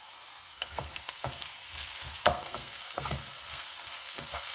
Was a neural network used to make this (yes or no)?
yes